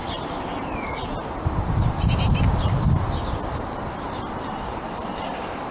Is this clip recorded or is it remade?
recorded